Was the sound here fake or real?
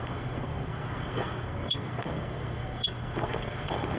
fake